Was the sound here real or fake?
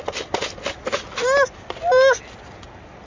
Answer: real